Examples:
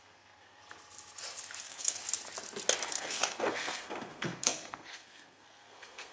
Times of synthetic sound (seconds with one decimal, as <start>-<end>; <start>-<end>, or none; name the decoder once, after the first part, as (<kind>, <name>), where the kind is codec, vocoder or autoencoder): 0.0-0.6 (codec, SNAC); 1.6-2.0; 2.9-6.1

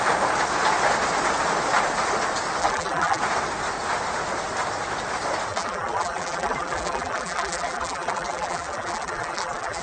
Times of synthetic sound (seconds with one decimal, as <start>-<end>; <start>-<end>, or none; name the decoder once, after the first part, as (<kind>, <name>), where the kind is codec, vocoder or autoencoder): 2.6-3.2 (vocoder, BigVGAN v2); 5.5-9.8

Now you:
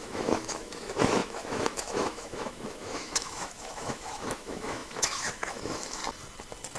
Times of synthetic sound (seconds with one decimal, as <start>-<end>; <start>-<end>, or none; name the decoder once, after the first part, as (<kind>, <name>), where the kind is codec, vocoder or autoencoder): 0.0-6.0 (autoencoder, DAC-VAE)

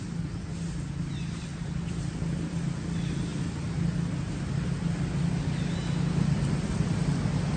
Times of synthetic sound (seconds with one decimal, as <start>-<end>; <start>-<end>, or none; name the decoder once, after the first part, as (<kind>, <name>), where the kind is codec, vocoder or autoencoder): none

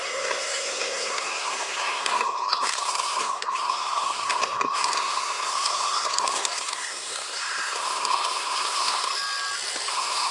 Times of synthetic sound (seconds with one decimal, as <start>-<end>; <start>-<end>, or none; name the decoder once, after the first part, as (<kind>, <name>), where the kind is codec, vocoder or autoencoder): 0.0-9.1 (codec, SNAC); 9.9-10.3